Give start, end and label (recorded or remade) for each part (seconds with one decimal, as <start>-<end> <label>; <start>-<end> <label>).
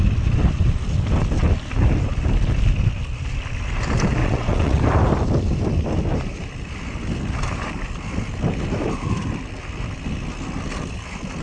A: 0.0-4.2 recorded; 4.2-4.8 remade; 4.8-11.4 recorded